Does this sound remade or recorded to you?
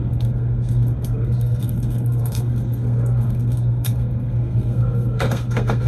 remade